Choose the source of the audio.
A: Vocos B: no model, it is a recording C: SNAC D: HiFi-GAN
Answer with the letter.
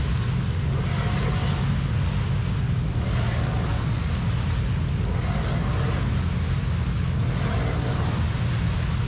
B